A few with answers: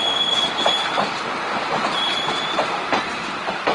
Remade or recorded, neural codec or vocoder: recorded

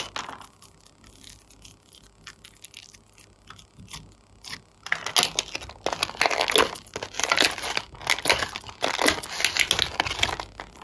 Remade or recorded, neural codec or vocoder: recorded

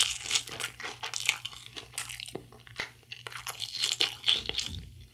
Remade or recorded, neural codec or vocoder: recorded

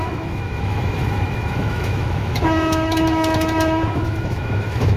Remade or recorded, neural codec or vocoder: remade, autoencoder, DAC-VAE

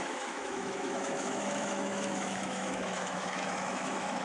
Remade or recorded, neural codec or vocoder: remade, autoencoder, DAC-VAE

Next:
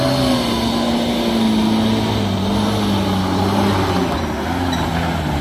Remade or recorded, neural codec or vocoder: recorded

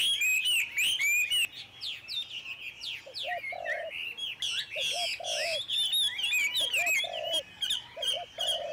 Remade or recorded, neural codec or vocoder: recorded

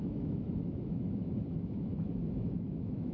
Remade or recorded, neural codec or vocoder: remade, autoencoder, DAC-VAE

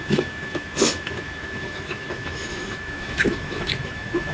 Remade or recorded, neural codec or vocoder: remade, autoencoder, DAC-VAE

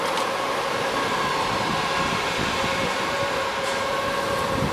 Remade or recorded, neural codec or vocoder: recorded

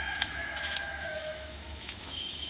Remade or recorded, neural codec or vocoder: remade, autoencoder, DAC-VAE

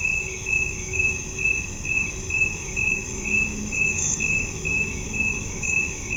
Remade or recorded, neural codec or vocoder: remade, autoencoder, DAC-VAE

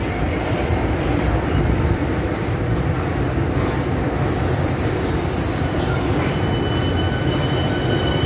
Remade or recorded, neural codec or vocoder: recorded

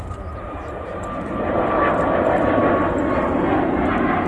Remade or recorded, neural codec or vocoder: recorded